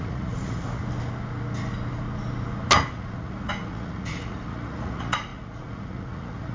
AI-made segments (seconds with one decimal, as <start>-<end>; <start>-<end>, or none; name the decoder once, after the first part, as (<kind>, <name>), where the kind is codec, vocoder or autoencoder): 0.0-0.8 (vocoder, Vocos); 2.9-6.5